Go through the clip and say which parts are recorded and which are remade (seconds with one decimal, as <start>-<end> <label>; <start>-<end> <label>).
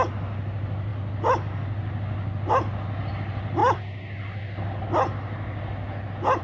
0.0-6.4 recorded